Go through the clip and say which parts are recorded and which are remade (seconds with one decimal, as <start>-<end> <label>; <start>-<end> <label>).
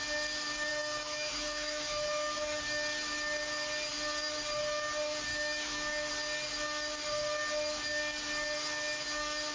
0.0-0.7 recorded; 0.7-2.6 remade; 2.6-5.3 recorded; 5.3-6.1 remade; 6.1-9.5 recorded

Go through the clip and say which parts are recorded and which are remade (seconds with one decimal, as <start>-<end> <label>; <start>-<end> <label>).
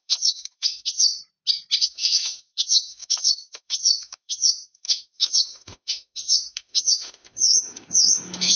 0.0-1.2 remade; 1.2-1.8 recorded; 1.8-8.6 remade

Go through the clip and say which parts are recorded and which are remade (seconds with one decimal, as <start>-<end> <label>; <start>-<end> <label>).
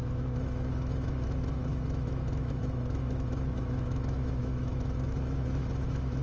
0.0-6.2 remade